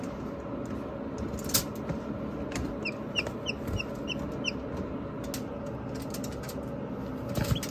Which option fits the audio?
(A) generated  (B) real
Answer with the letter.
B